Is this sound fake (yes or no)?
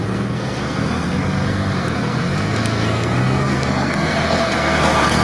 yes